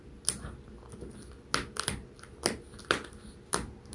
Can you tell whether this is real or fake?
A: real